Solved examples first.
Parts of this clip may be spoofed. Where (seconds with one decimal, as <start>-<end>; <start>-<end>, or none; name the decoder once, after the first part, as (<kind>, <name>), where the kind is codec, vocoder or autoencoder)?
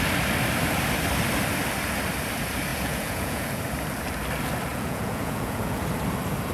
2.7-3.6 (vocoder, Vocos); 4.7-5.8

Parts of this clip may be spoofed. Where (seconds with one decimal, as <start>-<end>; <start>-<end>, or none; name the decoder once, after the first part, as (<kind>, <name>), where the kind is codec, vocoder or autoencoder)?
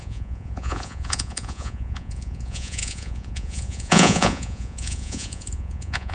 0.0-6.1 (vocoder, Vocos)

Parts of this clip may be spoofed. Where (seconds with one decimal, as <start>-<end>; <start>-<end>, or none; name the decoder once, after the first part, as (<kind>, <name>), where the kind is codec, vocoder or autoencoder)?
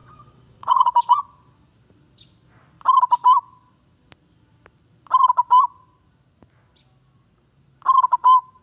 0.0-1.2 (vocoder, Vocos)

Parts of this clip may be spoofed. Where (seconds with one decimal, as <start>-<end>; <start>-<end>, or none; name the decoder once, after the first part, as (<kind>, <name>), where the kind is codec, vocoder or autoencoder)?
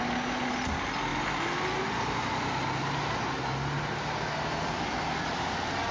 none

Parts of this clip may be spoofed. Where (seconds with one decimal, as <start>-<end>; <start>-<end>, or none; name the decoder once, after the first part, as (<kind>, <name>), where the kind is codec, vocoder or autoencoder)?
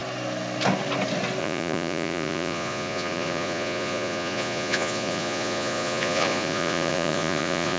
1.4-7.8 (vocoder, Vocos)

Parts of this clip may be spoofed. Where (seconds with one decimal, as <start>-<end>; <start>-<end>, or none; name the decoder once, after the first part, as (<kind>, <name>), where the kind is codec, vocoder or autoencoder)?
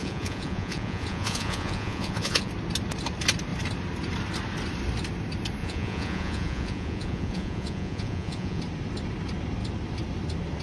0.0-2.5 (vocoder, Vocos); 5.6-8.6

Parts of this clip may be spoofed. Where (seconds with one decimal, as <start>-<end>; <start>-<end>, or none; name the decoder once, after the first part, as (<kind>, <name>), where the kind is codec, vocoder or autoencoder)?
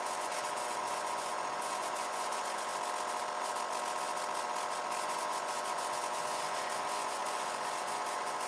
0.0-2.7 (vocoder, Vocos); 5.0-8.5